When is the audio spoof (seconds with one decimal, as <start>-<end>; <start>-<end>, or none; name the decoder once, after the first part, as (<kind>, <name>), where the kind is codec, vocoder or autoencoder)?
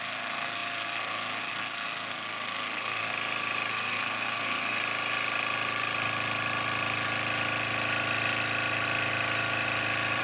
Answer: 0.0-3.1 (codec, SNAC); 3.7-4.8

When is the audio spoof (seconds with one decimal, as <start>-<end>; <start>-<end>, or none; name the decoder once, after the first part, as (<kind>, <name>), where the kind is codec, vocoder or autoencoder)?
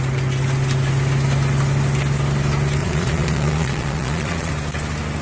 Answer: 2.8-4.5 (vocoder, Vocos)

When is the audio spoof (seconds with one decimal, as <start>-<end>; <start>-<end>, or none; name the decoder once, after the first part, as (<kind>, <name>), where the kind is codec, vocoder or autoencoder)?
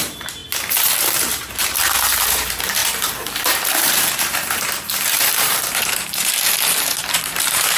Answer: 0.0-0.4 (vocoder, BigVGAN v2); 1.0-7.8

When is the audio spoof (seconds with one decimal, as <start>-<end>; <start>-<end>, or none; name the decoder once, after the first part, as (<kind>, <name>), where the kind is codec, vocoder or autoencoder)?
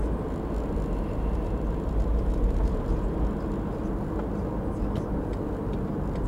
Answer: none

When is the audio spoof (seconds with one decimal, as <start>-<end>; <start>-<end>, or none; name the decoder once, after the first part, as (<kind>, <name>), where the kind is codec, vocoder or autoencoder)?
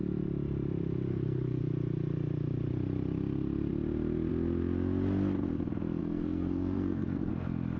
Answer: 1.1-1.6 (codec, SNAC); 6.0-7.3